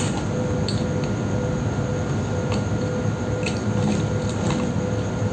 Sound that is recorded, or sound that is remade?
recorded